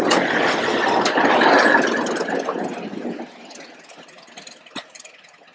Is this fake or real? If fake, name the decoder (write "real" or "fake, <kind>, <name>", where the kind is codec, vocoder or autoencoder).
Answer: real